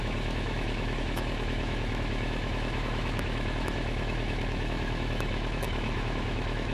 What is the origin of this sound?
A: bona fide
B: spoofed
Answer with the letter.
B